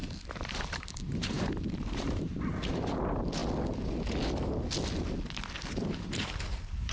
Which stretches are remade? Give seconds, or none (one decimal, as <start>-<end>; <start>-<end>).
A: 0.0-3.4; 6.0-6.9